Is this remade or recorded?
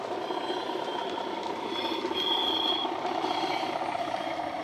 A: recorded